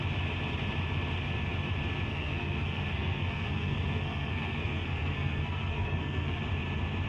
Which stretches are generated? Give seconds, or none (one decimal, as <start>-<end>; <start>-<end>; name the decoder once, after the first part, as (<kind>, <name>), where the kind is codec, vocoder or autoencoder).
2.1-6.4 (codec, SNAC)